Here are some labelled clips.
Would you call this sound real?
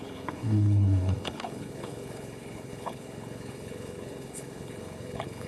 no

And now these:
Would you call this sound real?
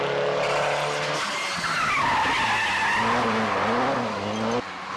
yes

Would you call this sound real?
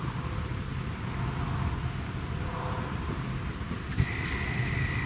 yes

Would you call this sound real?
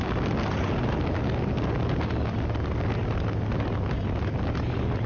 yes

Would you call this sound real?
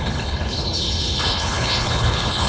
no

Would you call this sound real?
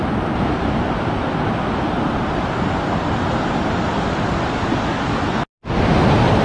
yes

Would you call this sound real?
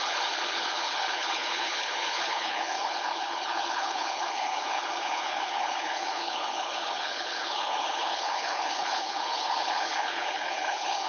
no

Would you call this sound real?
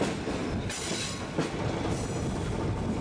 yes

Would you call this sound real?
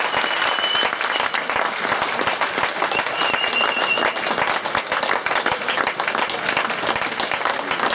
yes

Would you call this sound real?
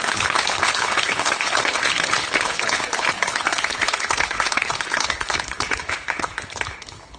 no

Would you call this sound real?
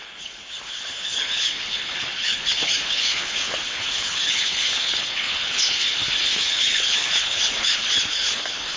no